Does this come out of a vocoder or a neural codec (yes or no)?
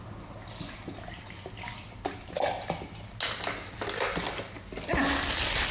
no